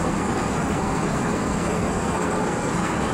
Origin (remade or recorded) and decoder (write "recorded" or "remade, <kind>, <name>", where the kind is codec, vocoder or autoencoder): remade, codec, SNAC